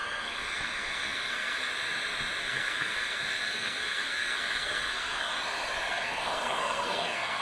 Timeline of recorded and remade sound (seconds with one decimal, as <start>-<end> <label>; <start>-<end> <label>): 0.0-1.7 remade; 1.7-2.4 recorded; 2.4-5.3 remade; 5.3-5.9 recorded; 5.9-7.4 remade